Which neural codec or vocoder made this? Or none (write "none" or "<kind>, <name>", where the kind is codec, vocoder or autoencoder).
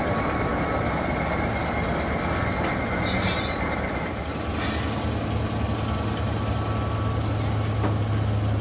none